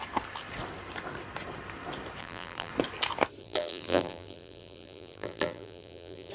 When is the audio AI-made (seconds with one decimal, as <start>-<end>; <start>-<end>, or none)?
2.2-2.7; 3.4-6.3